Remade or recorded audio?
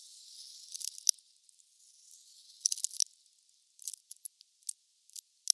recorded